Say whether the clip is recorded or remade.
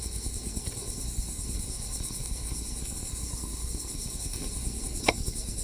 remade